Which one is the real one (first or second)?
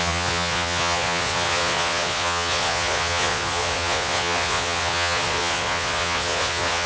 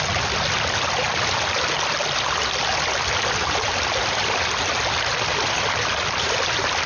second